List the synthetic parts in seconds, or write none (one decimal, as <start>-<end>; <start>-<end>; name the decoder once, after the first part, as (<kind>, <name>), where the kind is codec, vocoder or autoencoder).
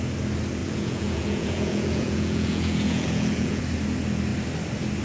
0.6-3.6 (vocoder, Vocos)